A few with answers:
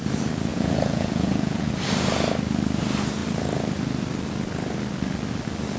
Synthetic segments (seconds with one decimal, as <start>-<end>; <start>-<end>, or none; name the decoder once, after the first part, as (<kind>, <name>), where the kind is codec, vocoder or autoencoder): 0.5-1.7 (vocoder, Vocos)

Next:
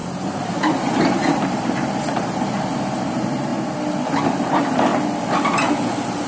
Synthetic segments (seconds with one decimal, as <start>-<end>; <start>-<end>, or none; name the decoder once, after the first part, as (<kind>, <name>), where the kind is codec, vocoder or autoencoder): 0.0-3.5 (vocoder, BigVGAN v2); 4.2-4.9

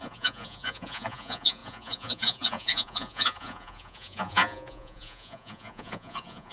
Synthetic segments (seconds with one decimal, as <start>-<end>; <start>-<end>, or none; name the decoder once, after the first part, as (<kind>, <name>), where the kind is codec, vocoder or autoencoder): 0.0-6.5 (vocoder, Vocos)

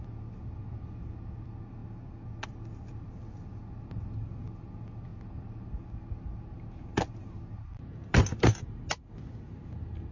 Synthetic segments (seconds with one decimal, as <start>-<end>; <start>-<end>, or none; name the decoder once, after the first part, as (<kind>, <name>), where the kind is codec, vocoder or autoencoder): none

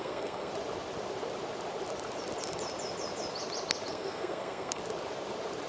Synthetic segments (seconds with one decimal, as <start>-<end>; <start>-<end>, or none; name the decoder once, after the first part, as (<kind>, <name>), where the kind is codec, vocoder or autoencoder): 0.0-0.5 (codec, SNAC); 3.9-4.8

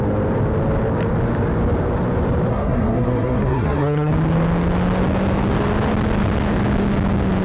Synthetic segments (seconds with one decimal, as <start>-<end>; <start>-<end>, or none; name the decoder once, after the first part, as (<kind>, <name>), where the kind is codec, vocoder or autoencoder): 2.5-4.1 (codec, SNAC)